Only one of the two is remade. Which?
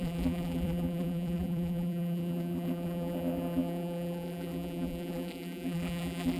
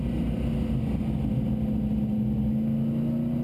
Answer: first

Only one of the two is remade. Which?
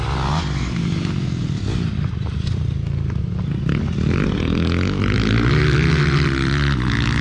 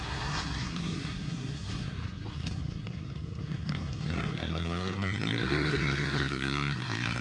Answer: second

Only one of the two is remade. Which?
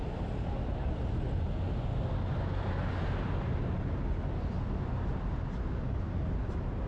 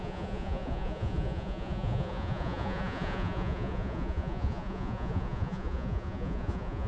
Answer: second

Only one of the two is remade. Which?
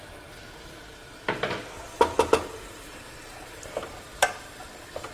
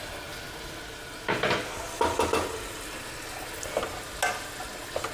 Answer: first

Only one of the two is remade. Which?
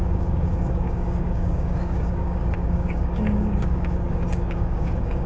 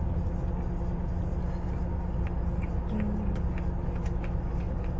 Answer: first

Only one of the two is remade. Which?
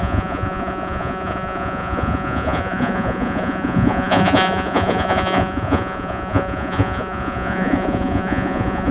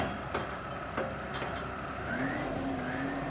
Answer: first